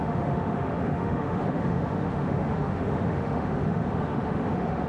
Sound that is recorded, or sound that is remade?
remade